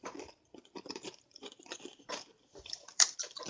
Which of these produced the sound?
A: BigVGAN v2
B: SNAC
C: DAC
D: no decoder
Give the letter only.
A